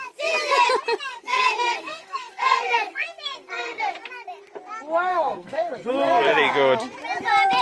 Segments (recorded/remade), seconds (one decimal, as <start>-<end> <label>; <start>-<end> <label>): 0.0-1.1 recorded; 1.1-3.8 remade; 3.8-5.1 recorded; 5.1-5.9 remade; 5.9-7.6 recorded